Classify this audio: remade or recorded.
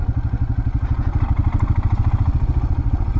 recorded